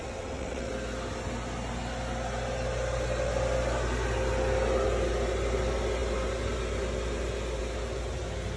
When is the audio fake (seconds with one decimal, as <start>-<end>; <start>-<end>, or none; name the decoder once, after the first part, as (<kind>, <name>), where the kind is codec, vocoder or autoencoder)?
0.0-0.7 (vocoder, WaveNeXt)